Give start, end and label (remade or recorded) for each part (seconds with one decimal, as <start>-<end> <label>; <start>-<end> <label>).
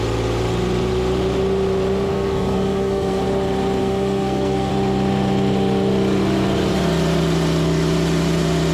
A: 0.0-2.1 recorded; 2.1-3.2 remade; 3.2-3.8 recorded; 3.8-4.7 remade; 4.7-8.7 recorded